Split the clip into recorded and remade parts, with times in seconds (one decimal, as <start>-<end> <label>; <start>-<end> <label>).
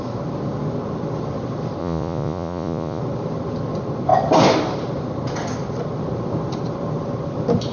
0.0-1.8 recorded; 1.8-3.0 remade; 3.0-7.7 recorded